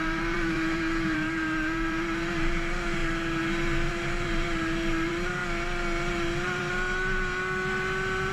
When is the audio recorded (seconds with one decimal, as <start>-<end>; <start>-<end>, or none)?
3.0-3.9; 5.4-6.1; 6.6-8.3